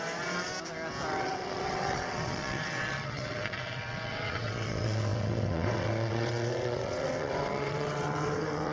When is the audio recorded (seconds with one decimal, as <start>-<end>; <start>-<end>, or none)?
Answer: 0.5-1.1